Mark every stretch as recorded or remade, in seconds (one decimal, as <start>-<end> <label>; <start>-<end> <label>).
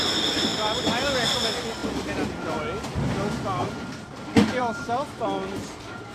0.0-6.1 recorded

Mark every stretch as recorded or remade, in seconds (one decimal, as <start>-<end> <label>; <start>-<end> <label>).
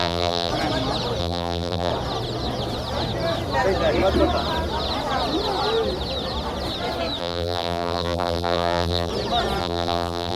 0.0-0.5 remade; 0.5-1.2 recorded; 1.2-1.9 remade; 1.9-7.2 recorded; 7.2-9.1 remade; 9.1-9.6 recorded; 9.6-10.4 remade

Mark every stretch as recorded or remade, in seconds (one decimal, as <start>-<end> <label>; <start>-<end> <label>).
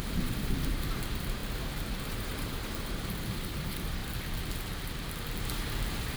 0.0-4.0 remade; 4.0-5.4 recorded; 5.4-6.2 remade